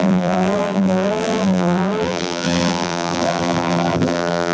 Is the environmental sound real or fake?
fake